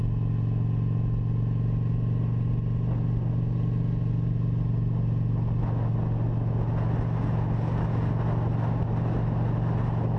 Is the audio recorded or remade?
recorded